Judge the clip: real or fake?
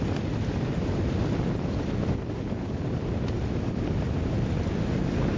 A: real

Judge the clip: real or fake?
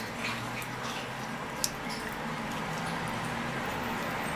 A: real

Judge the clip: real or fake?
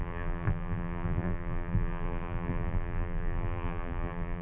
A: fake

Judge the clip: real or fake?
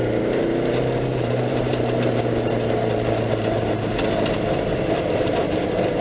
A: fake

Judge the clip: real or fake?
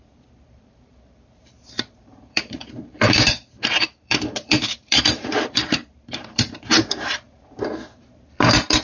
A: fake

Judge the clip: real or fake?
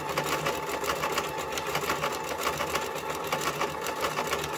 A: real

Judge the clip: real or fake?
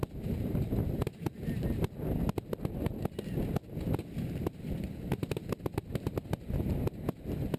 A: real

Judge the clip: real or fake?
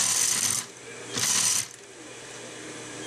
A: real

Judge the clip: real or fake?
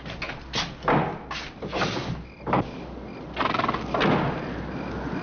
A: real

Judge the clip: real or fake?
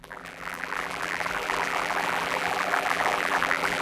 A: fake